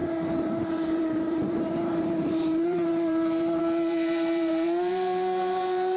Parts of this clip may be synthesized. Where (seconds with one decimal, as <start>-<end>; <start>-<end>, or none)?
0.0-6.0